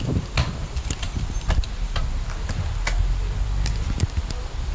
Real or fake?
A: real